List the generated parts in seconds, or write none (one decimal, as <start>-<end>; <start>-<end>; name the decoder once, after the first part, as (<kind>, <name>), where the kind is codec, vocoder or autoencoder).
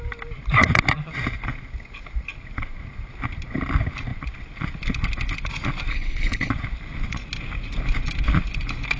5.9-6.5 (codec, HILCodec)